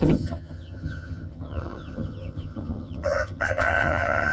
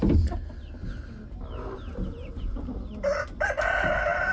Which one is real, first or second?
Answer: second